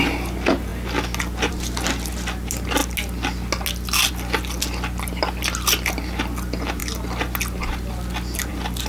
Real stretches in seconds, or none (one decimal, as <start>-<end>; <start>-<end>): 0.0-8.9